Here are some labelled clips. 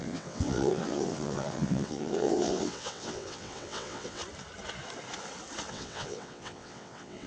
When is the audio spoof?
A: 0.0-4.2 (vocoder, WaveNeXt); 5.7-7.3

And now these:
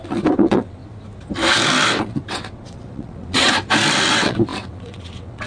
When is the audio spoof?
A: 0.0-0.8 (vocoder, WaveNeXt); 2.0-3.5; 4.1-5.5

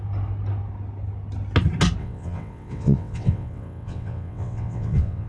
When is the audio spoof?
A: 2.0-5.3 (vocoder, WaveNeXt)

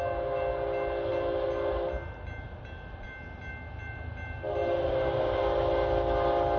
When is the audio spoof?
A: none

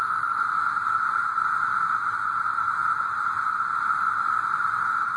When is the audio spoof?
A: none